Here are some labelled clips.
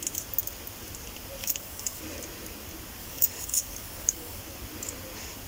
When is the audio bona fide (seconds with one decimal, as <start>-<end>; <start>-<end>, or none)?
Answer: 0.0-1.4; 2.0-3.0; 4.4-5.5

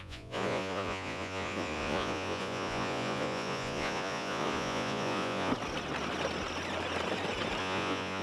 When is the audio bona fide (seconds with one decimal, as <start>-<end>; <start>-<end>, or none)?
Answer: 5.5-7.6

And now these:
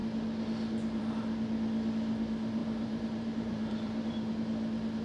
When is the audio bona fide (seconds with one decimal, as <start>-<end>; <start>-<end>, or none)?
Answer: 0.0-2.6; 4.3-5.0

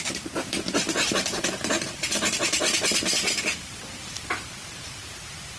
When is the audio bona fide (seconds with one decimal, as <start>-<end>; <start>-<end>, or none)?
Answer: 0.0-0.8; 3.4-5.6